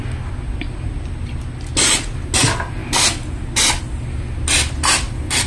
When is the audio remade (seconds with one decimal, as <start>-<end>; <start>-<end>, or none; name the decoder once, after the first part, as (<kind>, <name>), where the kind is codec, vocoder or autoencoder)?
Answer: none